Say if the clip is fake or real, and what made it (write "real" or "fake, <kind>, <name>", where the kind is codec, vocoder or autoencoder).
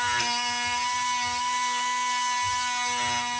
real